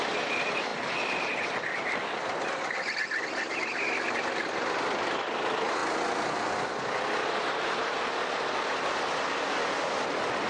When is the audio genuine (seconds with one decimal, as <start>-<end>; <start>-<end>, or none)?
0.0-10.5